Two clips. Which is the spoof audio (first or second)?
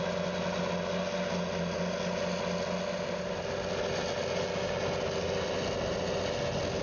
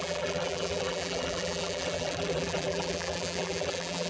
second